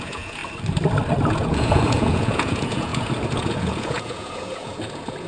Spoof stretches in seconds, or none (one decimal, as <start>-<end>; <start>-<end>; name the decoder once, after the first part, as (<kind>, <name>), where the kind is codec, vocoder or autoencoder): 0.0-0.4 (vocoder, Vocos); 1.2-5.3